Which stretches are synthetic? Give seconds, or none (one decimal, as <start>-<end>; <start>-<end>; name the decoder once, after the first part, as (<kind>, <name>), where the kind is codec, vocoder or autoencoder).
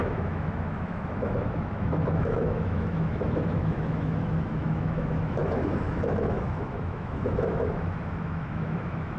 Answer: 0.0-9.2 (autoencoder, DAC-VAE)